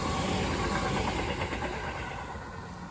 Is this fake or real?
real